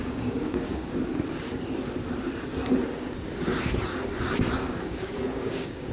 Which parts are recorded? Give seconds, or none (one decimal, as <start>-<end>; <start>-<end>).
1.1-4.6